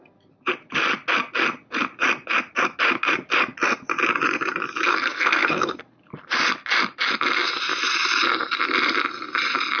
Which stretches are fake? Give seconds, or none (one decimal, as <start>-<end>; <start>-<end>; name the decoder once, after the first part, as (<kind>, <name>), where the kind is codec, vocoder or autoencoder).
4.9-5.8 (codec, SNAC)